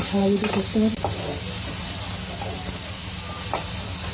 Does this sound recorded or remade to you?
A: recorded